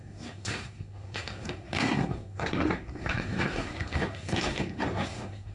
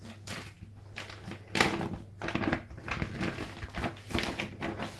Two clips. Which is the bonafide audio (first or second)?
second